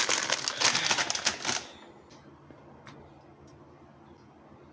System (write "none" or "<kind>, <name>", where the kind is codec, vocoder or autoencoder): none